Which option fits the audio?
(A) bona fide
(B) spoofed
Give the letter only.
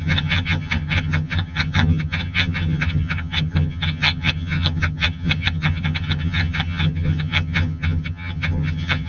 B